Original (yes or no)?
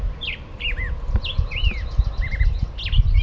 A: yes